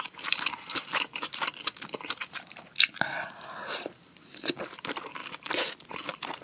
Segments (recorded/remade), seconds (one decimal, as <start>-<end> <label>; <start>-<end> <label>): 0.0-5.2 remade; 5.2-5.9 recorded; 5.9-6.4 remade